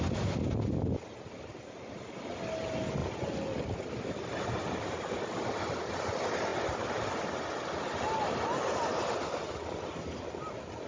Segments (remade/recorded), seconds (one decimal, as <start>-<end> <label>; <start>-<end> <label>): 0.0-10.9 recorded